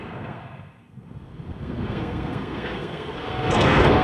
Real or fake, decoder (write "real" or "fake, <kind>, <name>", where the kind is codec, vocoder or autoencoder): fake, codec, SNAC